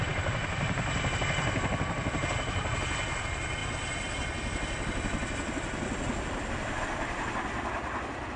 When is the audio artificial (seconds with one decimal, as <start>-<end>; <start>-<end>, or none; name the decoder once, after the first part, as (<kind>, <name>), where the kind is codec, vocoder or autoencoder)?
3.6-6.8 (vocoder, BigVGAN v2)